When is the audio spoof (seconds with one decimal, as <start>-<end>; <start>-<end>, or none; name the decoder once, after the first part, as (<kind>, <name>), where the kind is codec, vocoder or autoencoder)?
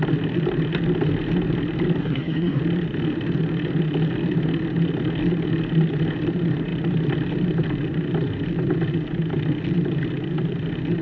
2.0-2.6 (codec, SNAC)